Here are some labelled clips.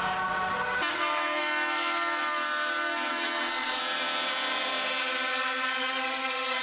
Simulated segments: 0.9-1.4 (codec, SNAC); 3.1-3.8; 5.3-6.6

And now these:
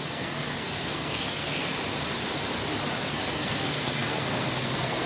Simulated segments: 0.0-1.7 (codec, SNAC); 3.0-5.1

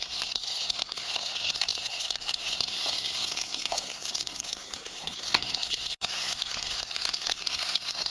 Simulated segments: 0.0-8.1 (codec, SNAC)

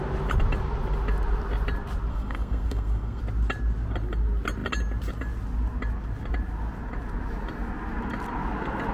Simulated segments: 2.1-3.2 (codec, SNAC)